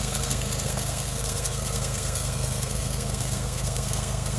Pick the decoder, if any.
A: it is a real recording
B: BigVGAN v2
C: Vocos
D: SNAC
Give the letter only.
D